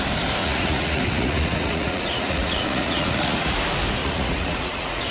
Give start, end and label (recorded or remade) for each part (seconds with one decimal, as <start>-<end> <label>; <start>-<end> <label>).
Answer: 0.0-0.4 recorded; 0.4-3.5 remade; 3.5-4.0 recorded; 4.0-5.1 remade